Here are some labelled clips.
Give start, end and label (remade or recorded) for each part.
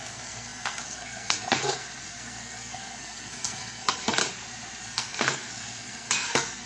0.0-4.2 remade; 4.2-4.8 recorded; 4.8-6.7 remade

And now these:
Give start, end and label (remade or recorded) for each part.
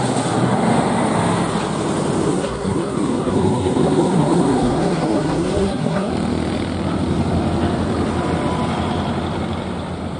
0.0-2.3 recorded; 2.3-6.1 remade; 6.1-10.2 recorded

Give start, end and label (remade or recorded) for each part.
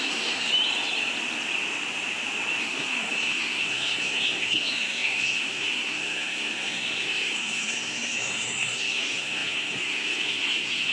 0.0-0.5 remade; 0.5-2.6 recorded; 2.6-10.9 remade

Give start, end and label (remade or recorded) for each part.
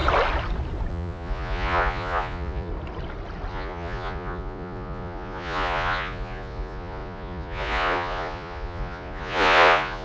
0.0-0.9 recorded; 0.9-2.7 remade; 2.7-3.5 recorded; 3.5-10.0 remade